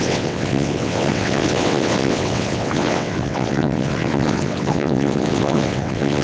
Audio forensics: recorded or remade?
remade